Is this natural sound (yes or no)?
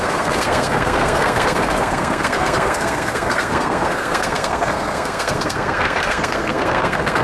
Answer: no